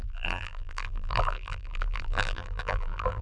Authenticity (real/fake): fake